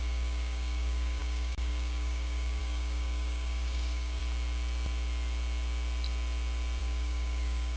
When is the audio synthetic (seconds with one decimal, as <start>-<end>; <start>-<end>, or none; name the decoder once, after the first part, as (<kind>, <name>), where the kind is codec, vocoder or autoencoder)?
0.0-4.2 (codec, DAC); 6.8-7.8